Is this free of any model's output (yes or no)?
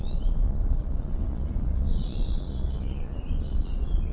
no